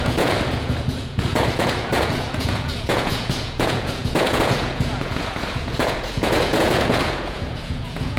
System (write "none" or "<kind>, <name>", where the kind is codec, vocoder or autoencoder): vocoder, Vocos